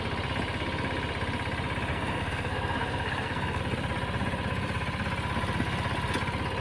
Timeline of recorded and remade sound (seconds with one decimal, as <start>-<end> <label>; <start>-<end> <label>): 0.0-1.9 recorded; 1.9-3.6 remade; 3.6-6.6 recorded